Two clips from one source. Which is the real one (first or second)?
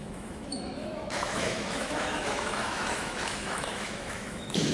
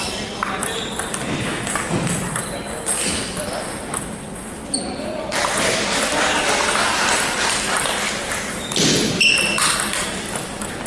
second